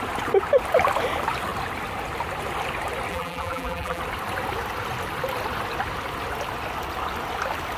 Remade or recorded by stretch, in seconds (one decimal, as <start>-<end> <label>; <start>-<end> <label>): 0.0-3.1 recorded; 3.1-4.0 remade; 4.0-7.8 recorded